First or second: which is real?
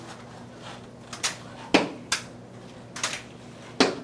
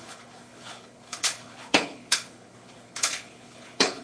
first